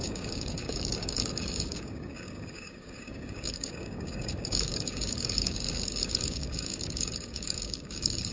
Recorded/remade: remade